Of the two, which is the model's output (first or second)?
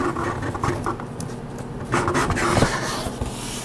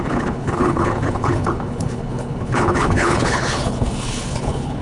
second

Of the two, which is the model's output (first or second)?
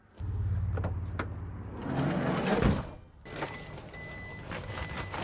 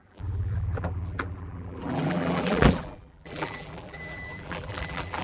second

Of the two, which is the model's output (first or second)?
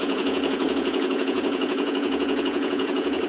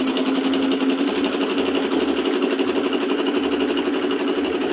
first